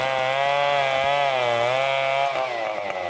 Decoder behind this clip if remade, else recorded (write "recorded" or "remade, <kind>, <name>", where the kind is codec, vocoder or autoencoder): recorded